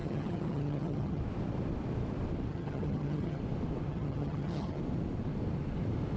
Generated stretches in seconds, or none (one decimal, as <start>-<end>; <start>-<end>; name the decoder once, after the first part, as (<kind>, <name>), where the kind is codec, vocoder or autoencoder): 0.0-1.2 (vocoder, HiFi-GAN); 2.5-3.4; 3.9-4.8